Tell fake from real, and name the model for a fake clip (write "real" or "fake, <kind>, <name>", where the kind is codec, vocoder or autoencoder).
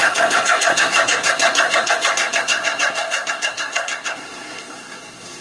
fake, codec, SNAC